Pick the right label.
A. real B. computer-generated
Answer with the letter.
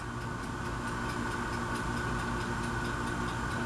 A